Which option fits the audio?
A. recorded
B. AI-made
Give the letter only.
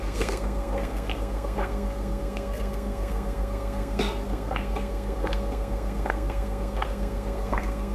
B